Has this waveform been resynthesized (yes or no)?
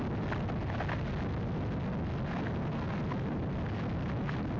no